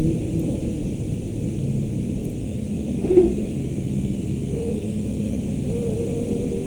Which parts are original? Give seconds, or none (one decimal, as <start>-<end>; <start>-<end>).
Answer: 0.0-2.4; 5.4-6.7

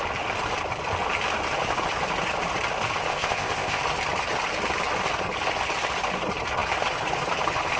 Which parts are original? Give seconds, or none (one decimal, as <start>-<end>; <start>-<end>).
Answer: 0.0-3.1; 3.8-7.8

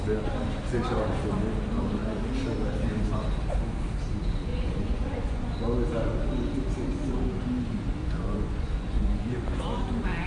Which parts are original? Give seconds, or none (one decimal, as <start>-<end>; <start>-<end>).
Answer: 0.0-4.5; 5.6-8.0; 9.6-10.3

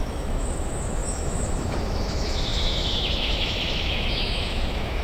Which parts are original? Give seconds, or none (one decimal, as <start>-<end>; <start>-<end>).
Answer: none

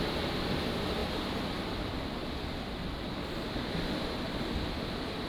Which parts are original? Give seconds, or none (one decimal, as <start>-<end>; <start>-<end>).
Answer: 0.0-5.3